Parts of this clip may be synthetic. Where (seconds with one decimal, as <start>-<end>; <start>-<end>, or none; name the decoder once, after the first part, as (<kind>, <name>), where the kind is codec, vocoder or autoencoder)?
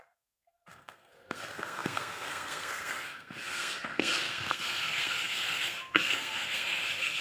0.0-7.2 (codec, SNAC)